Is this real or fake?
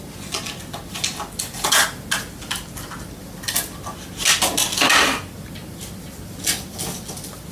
real